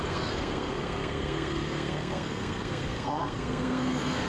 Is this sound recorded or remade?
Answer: remade